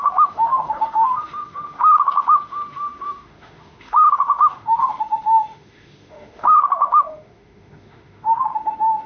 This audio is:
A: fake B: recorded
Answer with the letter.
A